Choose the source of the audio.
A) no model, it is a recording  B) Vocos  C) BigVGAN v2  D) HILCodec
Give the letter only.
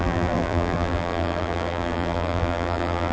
C